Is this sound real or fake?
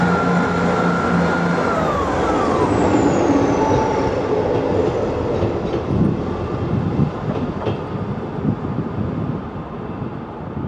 real